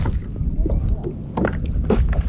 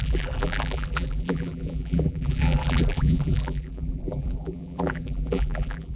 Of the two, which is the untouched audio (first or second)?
first